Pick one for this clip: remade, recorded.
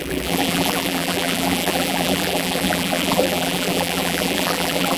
remade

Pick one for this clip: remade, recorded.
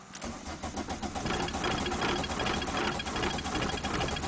recorded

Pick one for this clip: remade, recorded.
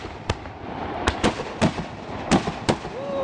remade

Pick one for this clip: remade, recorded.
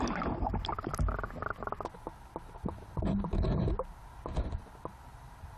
recorded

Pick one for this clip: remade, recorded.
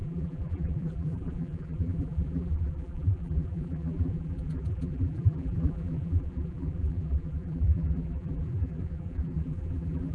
remade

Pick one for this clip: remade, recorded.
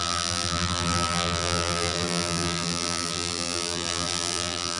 remade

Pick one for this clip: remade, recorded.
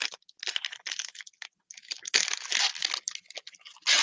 recorded